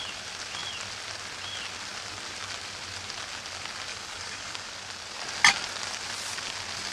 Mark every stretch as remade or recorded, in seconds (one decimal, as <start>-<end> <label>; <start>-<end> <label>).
0.0-3.9 recorded; 3.9-4.7 remade; 4.7-6.9 recorded